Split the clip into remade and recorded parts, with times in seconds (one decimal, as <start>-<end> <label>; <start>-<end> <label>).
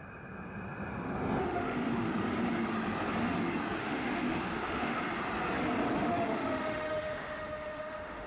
0.0-1.4 recorded; 1.4-2.1 remade; 2.1-3.8 recorded; 3.8-5.0 remade; 5.0-6.1 recorded; 6.1-8.3 remade